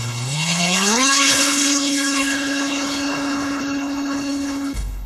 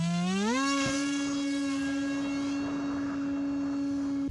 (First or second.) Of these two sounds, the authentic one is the second